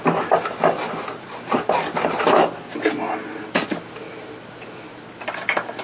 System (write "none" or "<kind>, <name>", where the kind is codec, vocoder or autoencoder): none